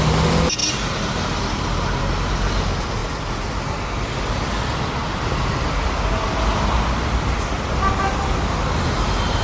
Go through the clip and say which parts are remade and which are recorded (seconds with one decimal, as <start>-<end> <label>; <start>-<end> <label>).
0.0-9.4 recorded